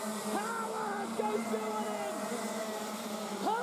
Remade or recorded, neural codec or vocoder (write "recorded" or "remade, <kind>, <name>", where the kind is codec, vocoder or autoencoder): recorded